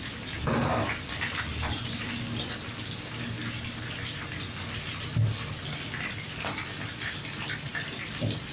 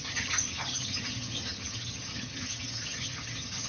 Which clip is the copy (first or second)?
second